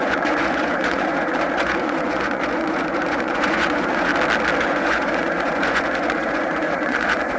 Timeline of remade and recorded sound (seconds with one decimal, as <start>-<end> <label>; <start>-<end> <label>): 0.0-4.1 remade; 4.1-4.6 recorded; 4.6-7.4 remade